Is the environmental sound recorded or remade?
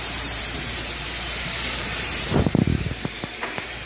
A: remade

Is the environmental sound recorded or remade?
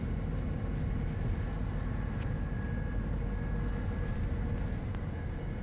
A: recorded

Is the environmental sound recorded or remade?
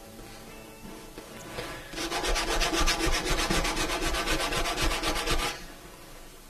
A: recorded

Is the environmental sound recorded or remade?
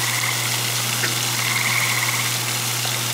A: recorded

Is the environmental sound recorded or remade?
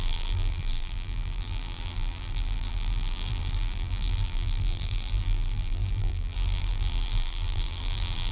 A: remade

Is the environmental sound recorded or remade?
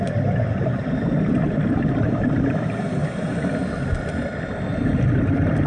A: remade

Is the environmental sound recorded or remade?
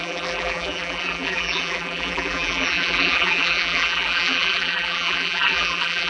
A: remade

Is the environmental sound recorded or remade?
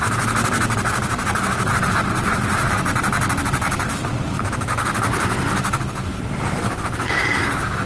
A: recorded